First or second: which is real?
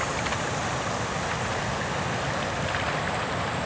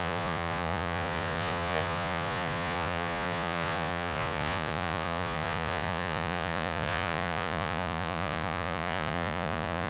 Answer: first